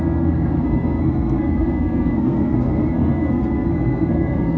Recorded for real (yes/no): no